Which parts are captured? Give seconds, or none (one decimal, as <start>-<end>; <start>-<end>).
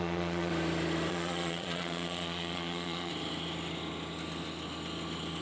0.5-1.1; 3.1-5.4